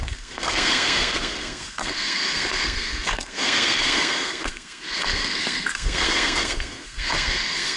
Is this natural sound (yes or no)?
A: no